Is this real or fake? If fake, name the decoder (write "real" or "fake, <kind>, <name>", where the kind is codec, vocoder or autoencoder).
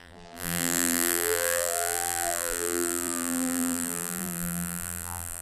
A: fake, vocoder, BigVGAN v2